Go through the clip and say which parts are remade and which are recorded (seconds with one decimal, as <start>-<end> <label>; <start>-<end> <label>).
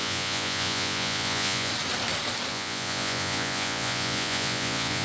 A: 0.0-1.7 remade; 1.7-2.5 recorded; 2.5-5.0 remade